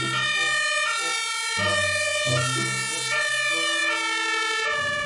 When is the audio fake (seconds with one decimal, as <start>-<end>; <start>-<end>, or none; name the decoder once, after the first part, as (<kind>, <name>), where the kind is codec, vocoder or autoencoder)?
none